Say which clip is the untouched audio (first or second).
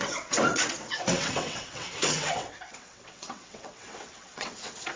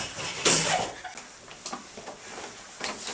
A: second